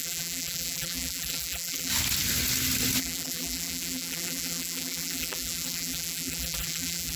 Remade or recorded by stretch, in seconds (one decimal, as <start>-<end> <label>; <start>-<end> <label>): 0.0-1.9 remade; 1.9-3.0 recorded; 3.0-7.2 remade